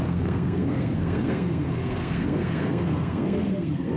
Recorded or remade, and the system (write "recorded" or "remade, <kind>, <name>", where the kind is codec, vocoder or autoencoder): remade, codec, SNAC